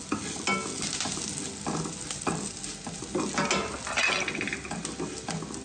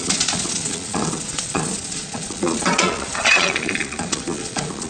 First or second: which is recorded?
first